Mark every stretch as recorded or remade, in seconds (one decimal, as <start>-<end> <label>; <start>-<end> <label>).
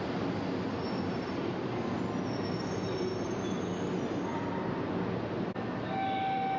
0.0-6.6 recorded